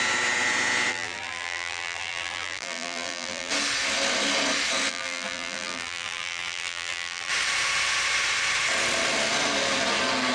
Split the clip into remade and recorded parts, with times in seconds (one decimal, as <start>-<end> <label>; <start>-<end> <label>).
0.0-0.9 recorded; 0.9-3.5 remade; 3.5-4.9 recorded; 4.9-7.3 remade; 7.3-10.3 recorded